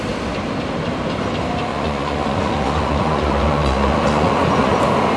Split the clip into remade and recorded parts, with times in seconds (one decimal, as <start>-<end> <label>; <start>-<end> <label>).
0.0-1.7 recorded; 1.7-4.8 remade; 4.8-5.2 recorded